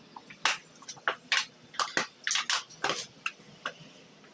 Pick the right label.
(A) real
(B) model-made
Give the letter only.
A